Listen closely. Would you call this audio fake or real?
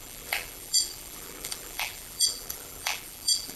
fake